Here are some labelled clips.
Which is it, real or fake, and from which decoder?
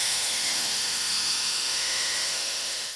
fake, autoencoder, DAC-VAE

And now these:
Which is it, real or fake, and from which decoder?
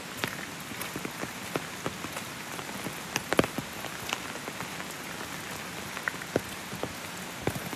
real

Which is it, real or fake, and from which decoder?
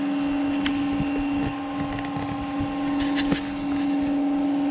real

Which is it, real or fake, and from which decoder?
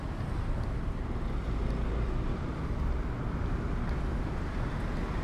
real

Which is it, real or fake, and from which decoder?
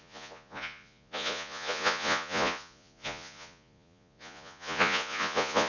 fake, vocoder, Vocos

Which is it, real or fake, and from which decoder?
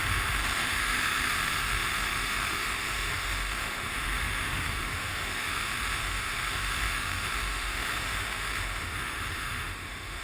fake, autoencoder, DAC-VAE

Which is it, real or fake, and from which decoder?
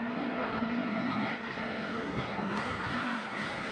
fake, codec, SNAC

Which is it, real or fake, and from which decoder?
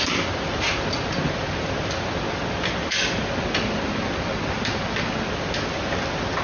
real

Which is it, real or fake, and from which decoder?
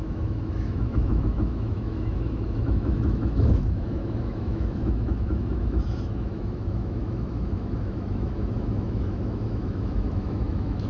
fake, autoencoder, DAC-VAE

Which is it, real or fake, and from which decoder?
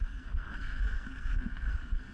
fake, codec, SNAC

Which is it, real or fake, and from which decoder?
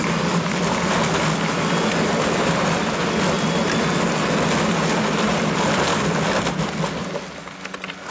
real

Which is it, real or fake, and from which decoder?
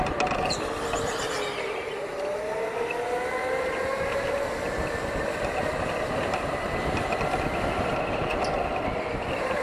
real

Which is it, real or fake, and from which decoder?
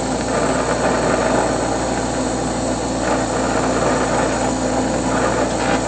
real